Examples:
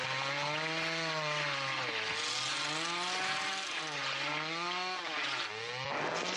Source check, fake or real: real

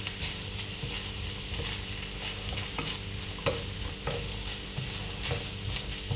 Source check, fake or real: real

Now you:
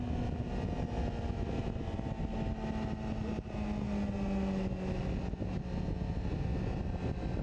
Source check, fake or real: real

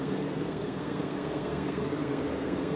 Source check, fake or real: fake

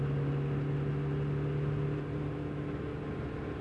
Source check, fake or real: real